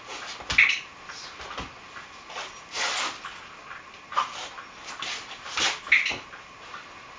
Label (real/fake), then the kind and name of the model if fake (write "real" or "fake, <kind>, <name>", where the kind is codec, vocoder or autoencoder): real